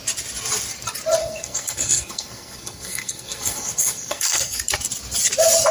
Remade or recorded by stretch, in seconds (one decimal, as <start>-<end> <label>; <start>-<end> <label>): 0.0-1.2 recorded; 1.2-4.6 remade; 4.6-5.7 recorded